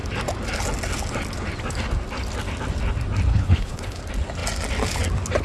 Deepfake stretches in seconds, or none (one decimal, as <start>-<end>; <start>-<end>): 3.3-4.0